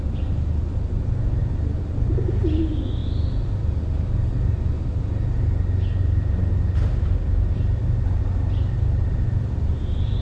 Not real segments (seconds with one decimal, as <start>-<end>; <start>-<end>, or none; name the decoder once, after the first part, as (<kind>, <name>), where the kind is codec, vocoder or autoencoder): 1.4-2.1 (vocoder, BigVGAN v2)